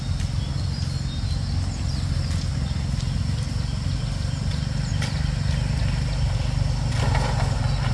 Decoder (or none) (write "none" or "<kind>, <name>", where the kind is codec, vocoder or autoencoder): none